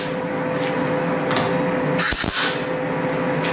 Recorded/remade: recorded